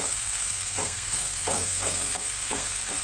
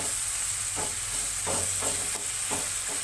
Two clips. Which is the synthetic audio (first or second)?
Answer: first